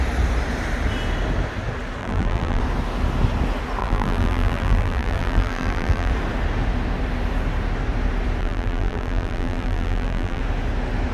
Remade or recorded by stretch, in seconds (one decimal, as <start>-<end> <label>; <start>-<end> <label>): 0.0-2.0 recorded; 2.0-2.6 remade; 2.6-3.8 recorded; 3.8-6.1 remade; 6.1-8.4 recorded; 8.4-10.4 remade; 10.4-11.1 recorded

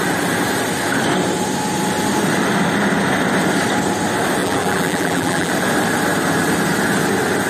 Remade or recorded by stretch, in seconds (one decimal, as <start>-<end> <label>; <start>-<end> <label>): 0.0-4.4 recorded; 4.4-5.5 remade; 5.5-7.5 recorded